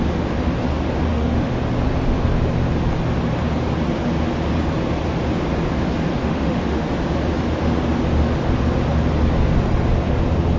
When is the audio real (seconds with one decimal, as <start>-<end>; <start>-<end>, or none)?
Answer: 0.0-1.1; 1.6-6.2; 6.9-10.6